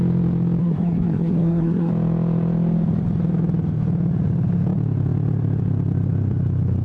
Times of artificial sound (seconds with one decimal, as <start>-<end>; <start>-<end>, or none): 0.6-1.9